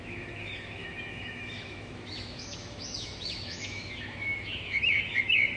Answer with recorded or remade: remade